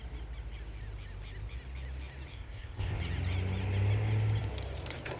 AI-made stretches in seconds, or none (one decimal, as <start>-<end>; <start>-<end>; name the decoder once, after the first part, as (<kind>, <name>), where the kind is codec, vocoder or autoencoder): 2.3-3.0 (codec, ZipCodec)